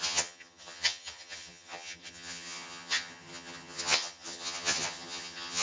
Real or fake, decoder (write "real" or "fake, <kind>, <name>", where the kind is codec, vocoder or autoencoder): fake, vocoder, HiFi-GAN